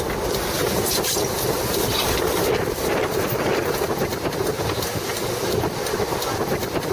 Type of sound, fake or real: fake